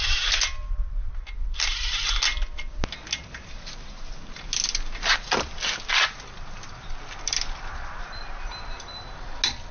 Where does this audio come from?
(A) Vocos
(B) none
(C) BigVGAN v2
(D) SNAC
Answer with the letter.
B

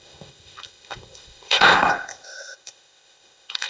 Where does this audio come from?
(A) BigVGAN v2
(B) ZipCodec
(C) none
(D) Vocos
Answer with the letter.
B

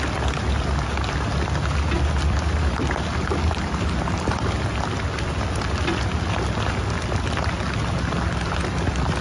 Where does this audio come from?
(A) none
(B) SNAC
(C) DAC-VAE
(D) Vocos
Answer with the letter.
A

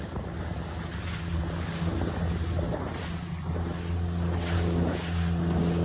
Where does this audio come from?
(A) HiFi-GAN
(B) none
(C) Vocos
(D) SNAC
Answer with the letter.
B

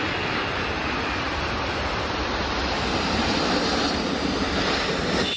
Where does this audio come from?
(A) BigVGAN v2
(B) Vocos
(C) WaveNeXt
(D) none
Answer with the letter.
D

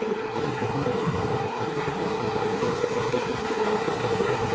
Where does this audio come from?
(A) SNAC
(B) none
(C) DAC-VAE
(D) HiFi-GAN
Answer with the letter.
A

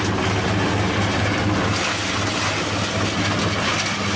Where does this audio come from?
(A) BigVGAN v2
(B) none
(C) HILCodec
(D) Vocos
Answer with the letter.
B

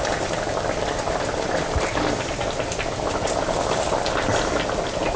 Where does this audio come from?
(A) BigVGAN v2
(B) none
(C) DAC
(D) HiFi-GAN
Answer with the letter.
B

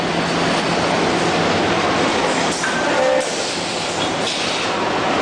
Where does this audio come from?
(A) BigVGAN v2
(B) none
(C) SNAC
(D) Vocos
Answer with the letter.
B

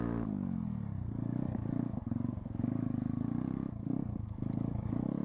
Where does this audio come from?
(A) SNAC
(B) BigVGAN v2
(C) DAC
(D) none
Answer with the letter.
C